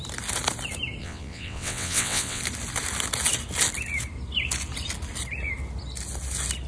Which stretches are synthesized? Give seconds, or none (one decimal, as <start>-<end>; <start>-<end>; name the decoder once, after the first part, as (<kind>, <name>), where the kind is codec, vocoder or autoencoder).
1.0-2.4 (vocoder, WaveNeXt)